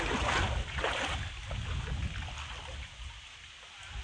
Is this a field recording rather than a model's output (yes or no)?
yes